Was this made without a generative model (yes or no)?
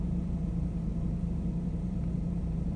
no